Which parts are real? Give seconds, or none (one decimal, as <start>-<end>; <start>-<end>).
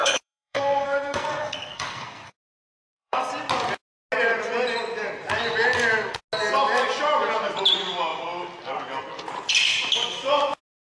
3.3-11.0